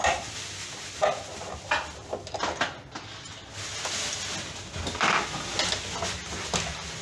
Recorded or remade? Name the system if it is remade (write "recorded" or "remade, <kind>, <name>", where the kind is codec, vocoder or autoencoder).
recorded